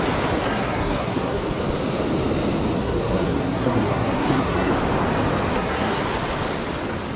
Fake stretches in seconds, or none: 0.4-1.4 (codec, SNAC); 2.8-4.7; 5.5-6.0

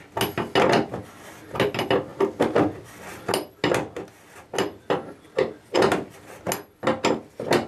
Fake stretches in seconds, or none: none

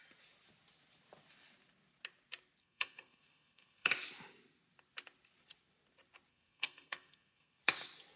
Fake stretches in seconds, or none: 2.6-3.9 (codec, SNAC); 6.3-7.6

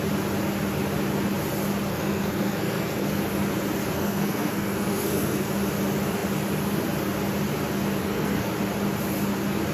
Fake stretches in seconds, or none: 1.9-3.2 (codec, SNAC); 3.8-5.5; 8.0-8.5

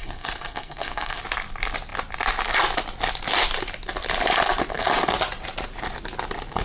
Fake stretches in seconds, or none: 0.0-1.2 (codec, SNAC)

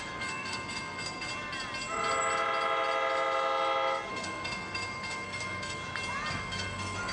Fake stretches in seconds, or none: 0.0-1.3 (codec, SNAC); 4.1-5.8; 6.3-7.1

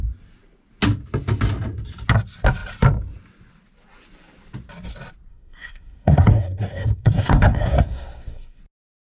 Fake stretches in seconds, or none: 5.3-8.6 (codec, SNAC)

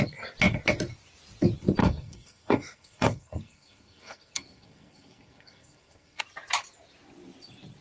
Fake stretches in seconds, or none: 1.8-6.2 (codec, SNAC)